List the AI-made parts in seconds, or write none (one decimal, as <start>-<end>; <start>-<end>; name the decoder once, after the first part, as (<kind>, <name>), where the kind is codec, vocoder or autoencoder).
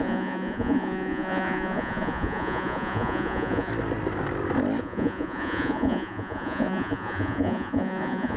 0.0-3.7 (vocoder, Vocos); 4.8-8.4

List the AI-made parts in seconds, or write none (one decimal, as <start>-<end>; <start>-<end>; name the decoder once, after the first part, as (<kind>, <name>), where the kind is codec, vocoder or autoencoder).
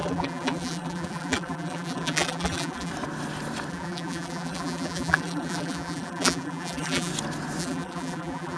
0.0-2.9 (vocoder, BigVGAN v2); 3.7-7.1; 7.6-8.6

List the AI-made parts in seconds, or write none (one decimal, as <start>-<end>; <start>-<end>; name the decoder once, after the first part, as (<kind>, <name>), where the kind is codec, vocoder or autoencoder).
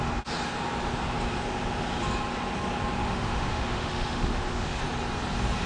3.0-4.8 (autoencoder, DAC-VAE)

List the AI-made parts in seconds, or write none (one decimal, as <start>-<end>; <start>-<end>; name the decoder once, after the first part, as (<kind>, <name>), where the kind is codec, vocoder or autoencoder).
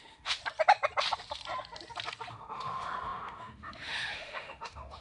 0.0-0.4 (autoencoder, DAC-VAE); 2.3-5.0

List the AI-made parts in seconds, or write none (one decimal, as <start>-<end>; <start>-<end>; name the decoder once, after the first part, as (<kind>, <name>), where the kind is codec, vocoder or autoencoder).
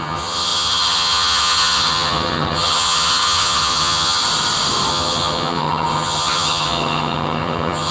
0.0-4.2 (vocoder, HiFi-GAN); 4.9-7.9